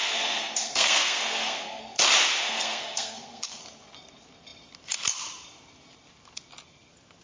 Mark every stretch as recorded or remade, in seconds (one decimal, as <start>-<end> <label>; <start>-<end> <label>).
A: 0.0-1.8 remade; 1.8-2.4 recorded; 2.4-3.6 remade; 3.6-7.2 recorded